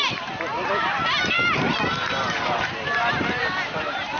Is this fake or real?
fake